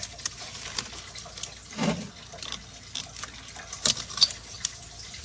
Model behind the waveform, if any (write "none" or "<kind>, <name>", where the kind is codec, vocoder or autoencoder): none